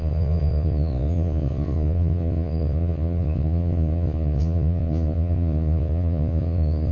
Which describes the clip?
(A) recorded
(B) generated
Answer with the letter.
B